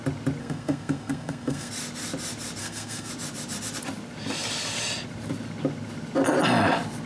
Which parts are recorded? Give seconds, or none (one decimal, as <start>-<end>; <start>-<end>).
0.0-0.4; 1.7-2.6; 3.1-7.1